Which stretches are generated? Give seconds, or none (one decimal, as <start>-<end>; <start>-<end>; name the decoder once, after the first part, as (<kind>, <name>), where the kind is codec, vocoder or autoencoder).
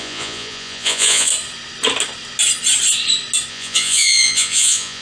0.0-1.3 (vocoder, Vocos); 3.5-5.0